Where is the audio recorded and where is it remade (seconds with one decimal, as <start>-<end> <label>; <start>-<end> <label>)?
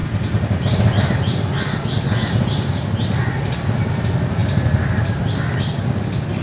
0.0-6.4 recorded